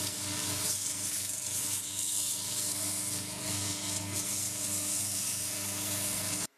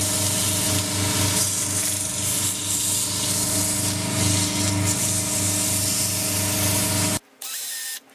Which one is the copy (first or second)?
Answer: first